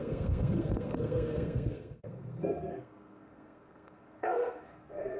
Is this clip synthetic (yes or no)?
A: yes